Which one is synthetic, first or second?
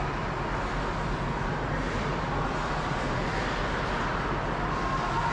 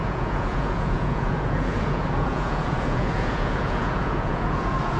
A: second